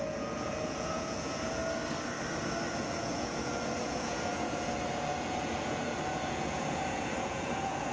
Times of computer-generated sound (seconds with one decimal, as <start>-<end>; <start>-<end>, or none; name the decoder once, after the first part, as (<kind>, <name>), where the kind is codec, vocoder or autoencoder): 0.0-1.6 (vocoder, Vocos); 2.7-7.9